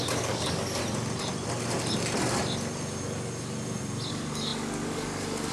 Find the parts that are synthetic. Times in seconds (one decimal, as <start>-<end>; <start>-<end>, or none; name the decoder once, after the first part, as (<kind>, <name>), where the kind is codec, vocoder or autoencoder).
0.0-0.8 (codec, DAC); 4.1-5.5